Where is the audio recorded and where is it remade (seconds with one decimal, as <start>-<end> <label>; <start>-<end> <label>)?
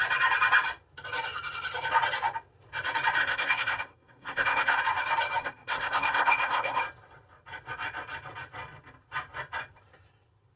0.0-3.2 recorded; 3.2-4.8 remade; 4.8-5.4 recorded; 5.4-6.8 remade; 6.8-10.6 recorded